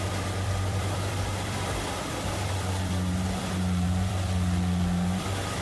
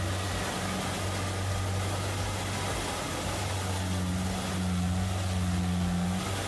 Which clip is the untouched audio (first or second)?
second